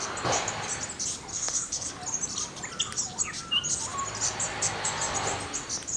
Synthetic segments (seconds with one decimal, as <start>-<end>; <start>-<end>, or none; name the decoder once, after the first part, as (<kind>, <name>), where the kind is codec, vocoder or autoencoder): 1.3-1.9 (codec, SNAC)